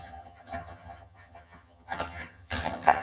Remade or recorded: remade